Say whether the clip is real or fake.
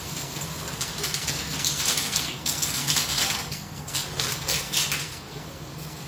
fake